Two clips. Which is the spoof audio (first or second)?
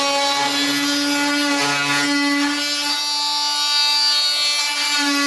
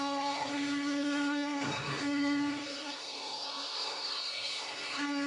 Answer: second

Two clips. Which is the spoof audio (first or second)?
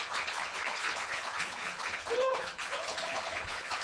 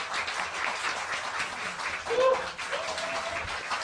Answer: first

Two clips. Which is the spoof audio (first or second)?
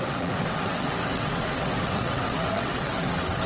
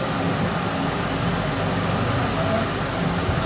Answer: first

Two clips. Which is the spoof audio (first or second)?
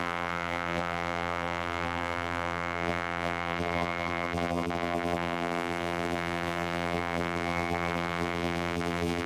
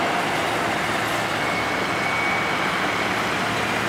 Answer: first